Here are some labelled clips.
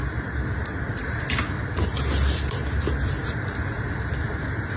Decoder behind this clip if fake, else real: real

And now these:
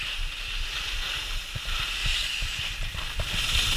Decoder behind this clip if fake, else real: real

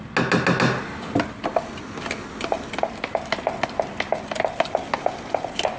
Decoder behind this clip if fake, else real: real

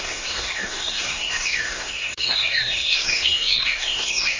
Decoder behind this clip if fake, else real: fake, codec, SNAC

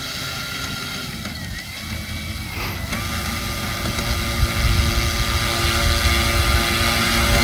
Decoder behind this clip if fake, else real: real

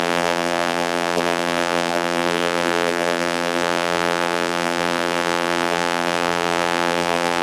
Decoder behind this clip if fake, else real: fake, vocoder, BigVGAN v2